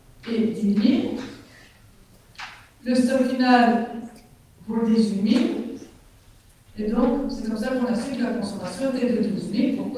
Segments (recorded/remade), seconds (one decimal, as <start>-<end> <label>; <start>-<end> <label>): 0.0-0.7 recorded; 0.7-1.2 remade; 1.2-3.8 recorded; 3.8-4.3 remade; 4.3-8.9 recorded; 8.9-10.0 remade

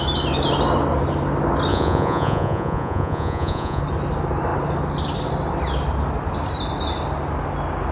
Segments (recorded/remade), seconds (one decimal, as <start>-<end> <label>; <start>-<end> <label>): 0.0-1.7 recorded; 1.7-3.8 remade; 3.8-7.9 recorded

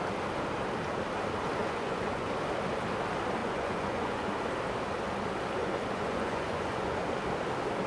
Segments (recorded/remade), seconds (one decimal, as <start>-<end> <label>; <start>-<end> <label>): 0.0-1.6 recorded; 1.6-2.3 remade; 2.3-3.4 recorded; 3.4-4.3 remade; 4.3-5.6 recorded; 5.6-7.0 remade; 7.0-7.9 recorded

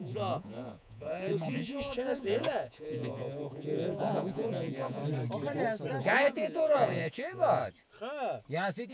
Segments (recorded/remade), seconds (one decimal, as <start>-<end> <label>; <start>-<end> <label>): 0.0-5.0 remade; 5.0-6.0 recorded; 6.0-7.6 remade; 7.6-8.9 recorded

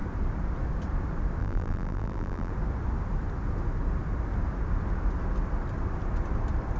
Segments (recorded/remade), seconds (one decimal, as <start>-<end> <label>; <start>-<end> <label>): 0.0-1.4 recorded; 1.4-2.5 remade; 2.5-6.8 recorded

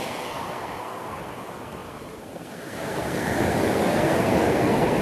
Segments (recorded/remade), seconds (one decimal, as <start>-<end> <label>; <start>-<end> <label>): 0.0-5.0 remade

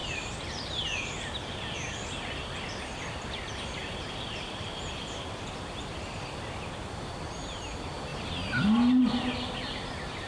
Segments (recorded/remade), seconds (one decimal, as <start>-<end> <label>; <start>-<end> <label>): 0.0-10.3 recorded

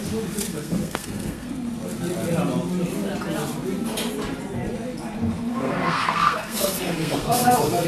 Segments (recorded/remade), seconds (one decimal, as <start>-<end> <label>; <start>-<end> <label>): 0.0-0.5 recorded; 0.5-1.5 remade; 1.5-5.5 recorded; 5.5-7.9 remade